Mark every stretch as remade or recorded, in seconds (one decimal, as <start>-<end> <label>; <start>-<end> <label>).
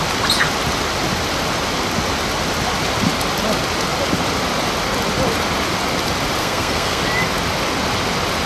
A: 0.0-6.4 recorded; 6.4-7.0 remade; 7.0-8.5 recorded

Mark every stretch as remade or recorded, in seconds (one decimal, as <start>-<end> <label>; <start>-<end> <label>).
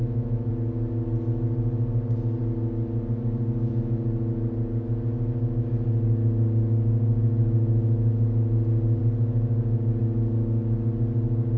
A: 0.0-0.5 remade; 0.5-11.6 recorded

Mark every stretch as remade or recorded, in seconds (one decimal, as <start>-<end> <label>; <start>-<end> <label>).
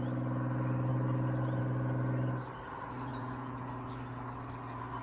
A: 0.0-3.1 recorded; 3.1-3.7 remade; 3.7-5.0 recorded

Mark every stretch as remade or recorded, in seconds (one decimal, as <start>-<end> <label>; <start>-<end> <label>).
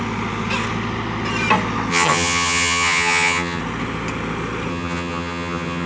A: 0.0-1.9 recorded; 1.9-3.6 remade; 3.6-4.7 recorded; 4.7-5.9 remade